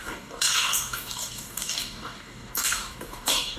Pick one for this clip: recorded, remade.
remade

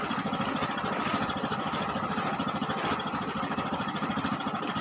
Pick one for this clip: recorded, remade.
remade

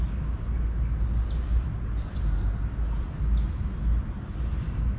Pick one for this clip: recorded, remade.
recorded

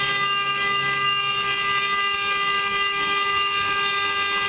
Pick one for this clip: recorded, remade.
recorded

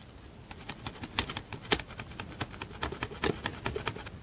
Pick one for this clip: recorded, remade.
recorded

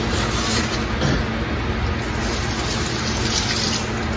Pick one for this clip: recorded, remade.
recorded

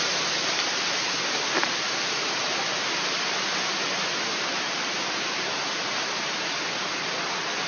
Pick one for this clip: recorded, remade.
recorded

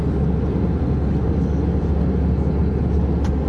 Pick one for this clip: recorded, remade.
recorded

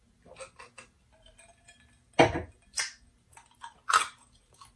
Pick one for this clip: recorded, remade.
recorded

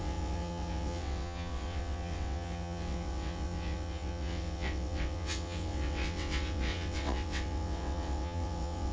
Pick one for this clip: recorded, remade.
remade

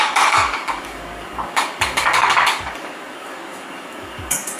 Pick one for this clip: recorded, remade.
remade